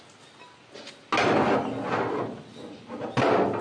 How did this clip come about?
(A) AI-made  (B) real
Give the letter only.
B